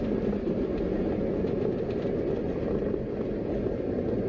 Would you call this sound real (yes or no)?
yes